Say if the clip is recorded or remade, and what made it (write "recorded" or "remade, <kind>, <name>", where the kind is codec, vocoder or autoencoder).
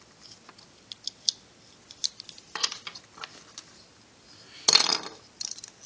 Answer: recorded